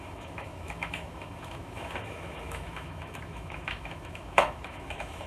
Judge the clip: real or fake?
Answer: fake